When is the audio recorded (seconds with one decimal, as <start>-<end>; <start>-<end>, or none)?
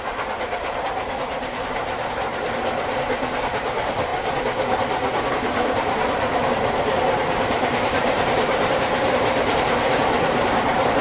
2.3-3.5; 4.1-5.3